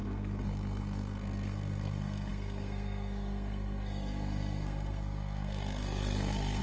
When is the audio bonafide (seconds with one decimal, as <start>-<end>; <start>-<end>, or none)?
none